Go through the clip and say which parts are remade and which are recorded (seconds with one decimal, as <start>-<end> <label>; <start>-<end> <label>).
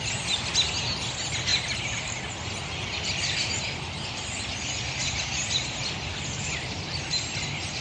0.0-7.8 recorded